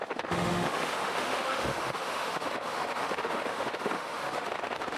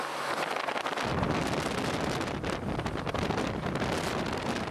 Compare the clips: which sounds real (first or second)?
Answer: second